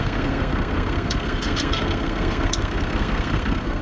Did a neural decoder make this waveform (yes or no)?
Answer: yes